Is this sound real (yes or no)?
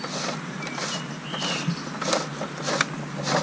yes